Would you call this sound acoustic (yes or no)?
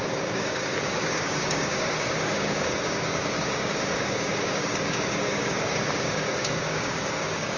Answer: no